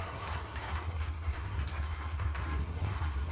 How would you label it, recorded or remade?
remade